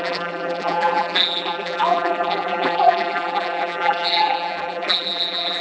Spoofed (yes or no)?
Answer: yes